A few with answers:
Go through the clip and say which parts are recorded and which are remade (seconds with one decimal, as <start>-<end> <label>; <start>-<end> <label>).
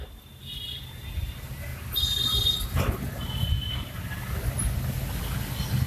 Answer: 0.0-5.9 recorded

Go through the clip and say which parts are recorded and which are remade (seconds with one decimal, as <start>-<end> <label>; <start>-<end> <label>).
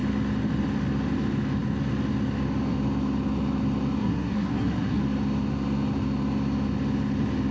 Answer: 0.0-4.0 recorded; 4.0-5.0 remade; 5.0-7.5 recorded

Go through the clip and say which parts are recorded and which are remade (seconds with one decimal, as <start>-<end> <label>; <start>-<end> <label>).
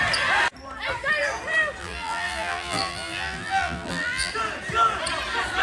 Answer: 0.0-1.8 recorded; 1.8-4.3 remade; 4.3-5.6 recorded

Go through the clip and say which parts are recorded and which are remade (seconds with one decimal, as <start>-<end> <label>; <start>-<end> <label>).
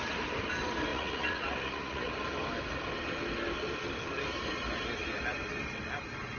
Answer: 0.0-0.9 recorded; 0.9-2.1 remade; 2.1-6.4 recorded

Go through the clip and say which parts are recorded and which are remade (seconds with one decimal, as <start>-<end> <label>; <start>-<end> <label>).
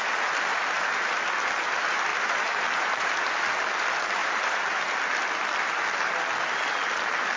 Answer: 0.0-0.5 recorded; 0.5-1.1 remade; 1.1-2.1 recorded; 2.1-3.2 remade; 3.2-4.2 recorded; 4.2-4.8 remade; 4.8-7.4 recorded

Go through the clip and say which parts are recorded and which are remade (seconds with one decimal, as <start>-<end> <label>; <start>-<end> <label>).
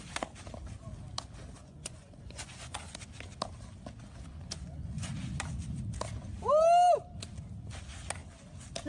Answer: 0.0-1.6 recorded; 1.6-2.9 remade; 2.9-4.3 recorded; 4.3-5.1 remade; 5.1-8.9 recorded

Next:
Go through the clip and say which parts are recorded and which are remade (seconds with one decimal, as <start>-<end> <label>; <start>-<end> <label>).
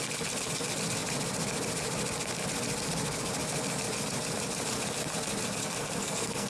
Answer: 0.0-5.6 recorded; 5.6-6.5 remade